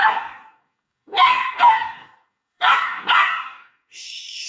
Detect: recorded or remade remade